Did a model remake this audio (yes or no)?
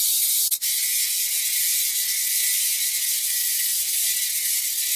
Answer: no